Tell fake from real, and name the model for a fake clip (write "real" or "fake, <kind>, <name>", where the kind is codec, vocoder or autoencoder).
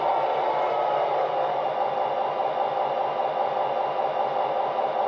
real